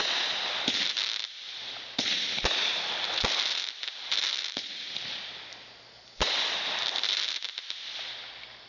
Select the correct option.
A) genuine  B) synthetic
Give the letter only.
A